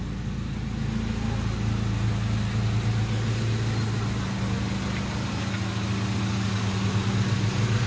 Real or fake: real